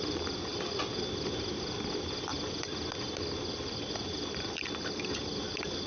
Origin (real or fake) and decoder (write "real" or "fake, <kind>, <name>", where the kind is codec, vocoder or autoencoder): real